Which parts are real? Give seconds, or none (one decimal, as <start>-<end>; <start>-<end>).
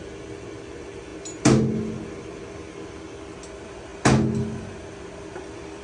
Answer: 0.0-5.8